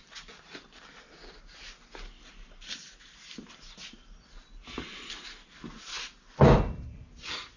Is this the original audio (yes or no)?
yes